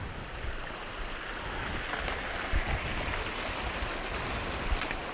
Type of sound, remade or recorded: recorded